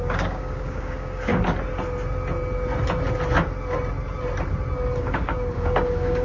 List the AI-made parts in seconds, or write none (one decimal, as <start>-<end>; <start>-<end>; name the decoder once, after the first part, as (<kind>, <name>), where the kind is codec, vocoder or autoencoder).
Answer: 0.0-1.3 (codec, DAC); 5.0-6.2